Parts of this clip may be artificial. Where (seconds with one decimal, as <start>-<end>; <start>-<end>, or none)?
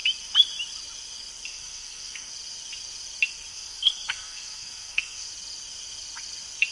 1.5-2.3; 3.5-5.3